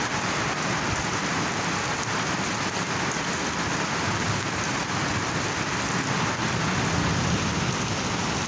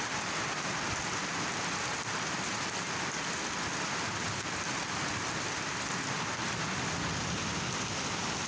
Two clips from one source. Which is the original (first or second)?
first